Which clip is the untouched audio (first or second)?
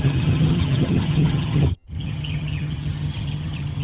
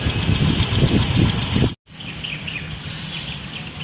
second